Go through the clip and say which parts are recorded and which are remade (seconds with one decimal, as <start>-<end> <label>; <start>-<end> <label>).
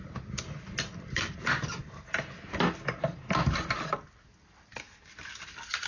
0.0-5.9 recorded